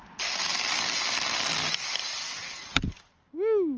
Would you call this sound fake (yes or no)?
no